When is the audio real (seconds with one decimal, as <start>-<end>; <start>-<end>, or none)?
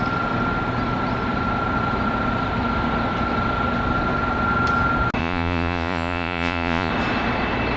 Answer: 0.0-5.2; 6.9-7.8